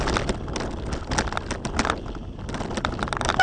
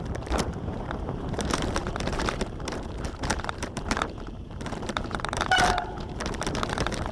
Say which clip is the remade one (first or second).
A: second